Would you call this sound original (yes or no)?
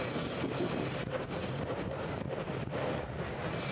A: no